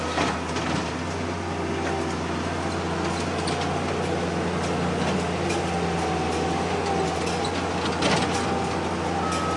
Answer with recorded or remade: recorded